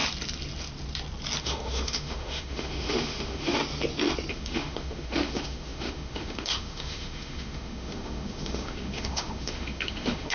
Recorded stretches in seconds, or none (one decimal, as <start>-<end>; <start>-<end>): 0.0-1.4; 3.6-4.3